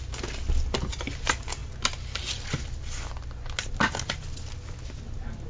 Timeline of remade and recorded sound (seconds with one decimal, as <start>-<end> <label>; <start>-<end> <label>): 0.0-5.5 recorded